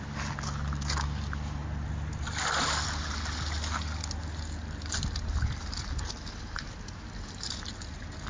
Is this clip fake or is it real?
real